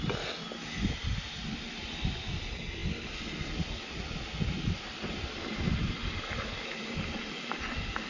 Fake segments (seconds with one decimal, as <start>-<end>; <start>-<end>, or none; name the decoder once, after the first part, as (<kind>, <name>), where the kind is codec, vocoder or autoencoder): none

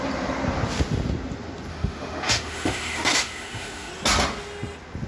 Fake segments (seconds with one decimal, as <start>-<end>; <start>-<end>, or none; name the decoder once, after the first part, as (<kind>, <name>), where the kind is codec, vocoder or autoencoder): 1.7-3.9 (autoencoder, DAC-VAE)

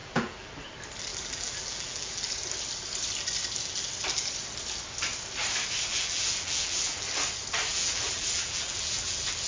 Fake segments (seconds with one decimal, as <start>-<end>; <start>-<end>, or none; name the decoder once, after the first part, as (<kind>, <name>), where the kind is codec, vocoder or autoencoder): 0.0-0.5 (vocoder, BigVGAN v2); 1.1-2.2; 5.9-7.1; 7.7-9.5